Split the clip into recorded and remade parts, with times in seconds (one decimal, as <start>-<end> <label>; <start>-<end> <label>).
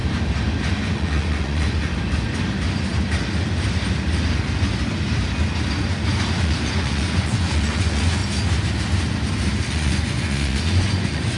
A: 0.0-0.8 recorded; 0.8-1.9 remade; 1.9-6.4 recorded; 6.4-8.2 remade; 8.2-9.7 recorded; 9.7-11.4 remade